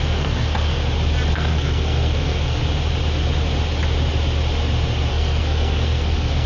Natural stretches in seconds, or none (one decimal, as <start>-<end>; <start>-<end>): 0.8-1.3; 2.6-5.1